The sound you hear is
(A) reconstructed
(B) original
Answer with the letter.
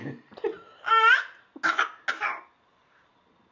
B